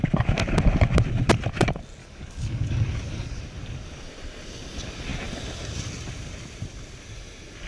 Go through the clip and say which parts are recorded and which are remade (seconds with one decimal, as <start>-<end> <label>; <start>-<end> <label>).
0.0-2.0 recorded; 2.0-3.4 remade; 3.4-7.7 recorded